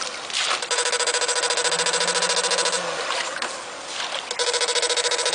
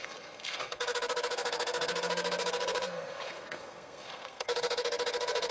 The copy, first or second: second